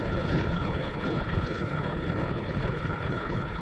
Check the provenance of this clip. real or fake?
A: fake